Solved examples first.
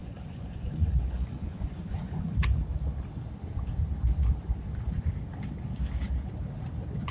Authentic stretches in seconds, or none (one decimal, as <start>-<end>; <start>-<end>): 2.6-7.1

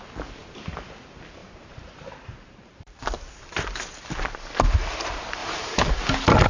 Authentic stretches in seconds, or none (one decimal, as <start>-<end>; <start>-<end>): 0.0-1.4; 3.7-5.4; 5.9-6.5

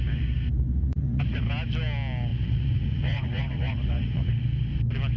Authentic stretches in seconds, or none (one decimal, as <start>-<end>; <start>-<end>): 0.0-0.7; 1.5-2.3; 4.3-5.2